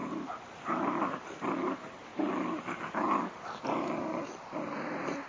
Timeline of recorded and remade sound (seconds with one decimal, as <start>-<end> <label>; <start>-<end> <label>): 0.0-1.7 remade; 1.7-2.1 recorded; 2.1-5.3 remade